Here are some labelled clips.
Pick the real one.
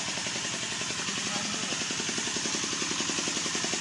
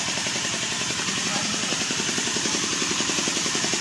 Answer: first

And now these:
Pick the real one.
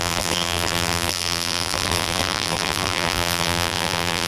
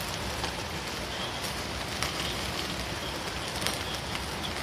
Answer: second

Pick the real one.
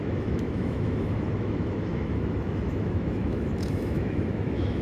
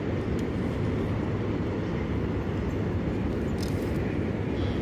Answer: second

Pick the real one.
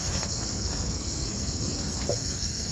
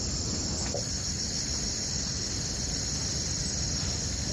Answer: second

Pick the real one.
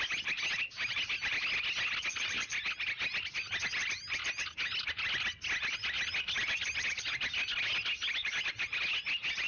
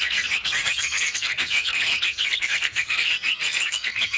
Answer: first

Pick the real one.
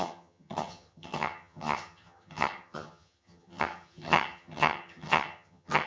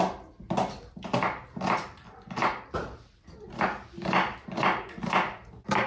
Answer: second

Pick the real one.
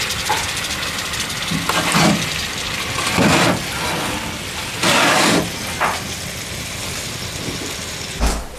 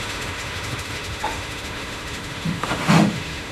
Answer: first